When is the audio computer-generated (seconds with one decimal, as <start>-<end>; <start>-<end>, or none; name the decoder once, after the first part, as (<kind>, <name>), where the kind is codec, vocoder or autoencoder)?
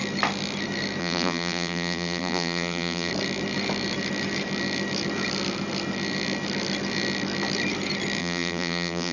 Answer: 1.0-3.1 (vocoder, BigVGAN v2); 8.2-9.1